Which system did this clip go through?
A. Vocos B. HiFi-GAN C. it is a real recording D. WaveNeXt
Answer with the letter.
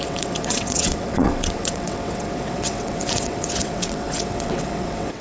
D